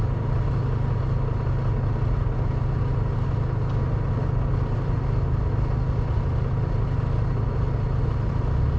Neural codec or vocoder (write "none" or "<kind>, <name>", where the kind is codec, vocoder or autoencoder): none